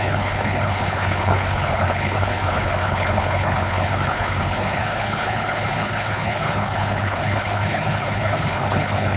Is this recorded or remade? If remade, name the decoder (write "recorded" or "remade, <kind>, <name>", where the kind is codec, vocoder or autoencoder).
remade, codec, HILCodec